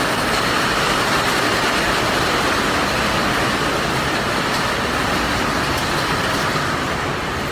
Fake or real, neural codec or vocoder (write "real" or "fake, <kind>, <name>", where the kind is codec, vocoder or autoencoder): real